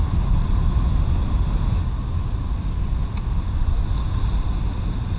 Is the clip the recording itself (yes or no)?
yes